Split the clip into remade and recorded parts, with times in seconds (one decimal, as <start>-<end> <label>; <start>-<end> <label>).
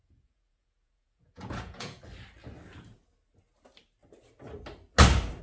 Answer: 0.0-2.0 remade; 2.0-5.4 recorded